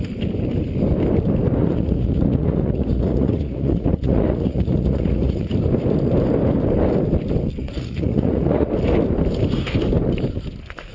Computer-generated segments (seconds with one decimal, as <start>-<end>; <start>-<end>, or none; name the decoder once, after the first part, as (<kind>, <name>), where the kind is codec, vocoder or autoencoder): 1.6-5.5 (vocoder, Vocos); 7.6-8.7